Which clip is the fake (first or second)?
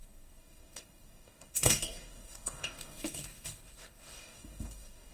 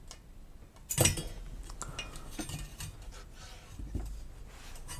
first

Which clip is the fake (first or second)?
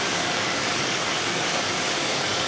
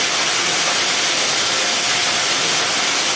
first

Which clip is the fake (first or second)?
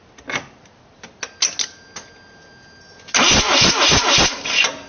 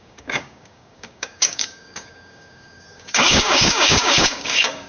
second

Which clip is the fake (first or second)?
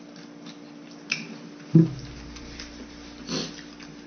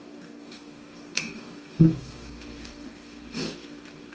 second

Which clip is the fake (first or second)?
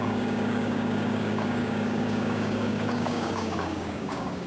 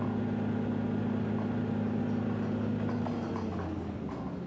first